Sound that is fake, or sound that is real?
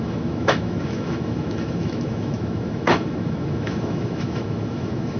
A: fake